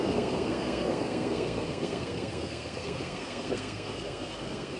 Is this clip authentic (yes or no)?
no